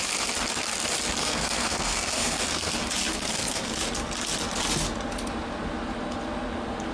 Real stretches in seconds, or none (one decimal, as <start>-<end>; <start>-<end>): 0.0-1.2; 2.7-3.1; 3.7-6.9